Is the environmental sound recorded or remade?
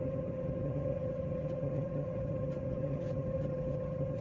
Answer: remade